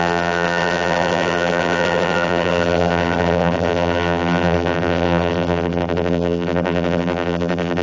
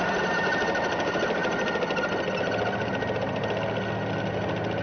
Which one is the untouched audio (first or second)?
second